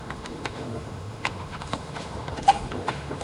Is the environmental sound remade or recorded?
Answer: remade